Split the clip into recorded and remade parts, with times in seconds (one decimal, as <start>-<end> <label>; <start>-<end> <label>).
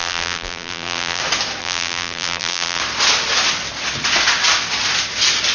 0.0-1.2 remade; 1.2-1.6 recorded; 1.6-2.8 remade; 2.8-5.5 recorded